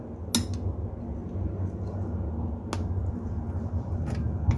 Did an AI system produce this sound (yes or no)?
no